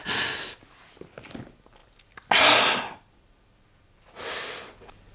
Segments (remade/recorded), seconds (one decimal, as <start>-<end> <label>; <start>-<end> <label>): 0.0-5.1 recorded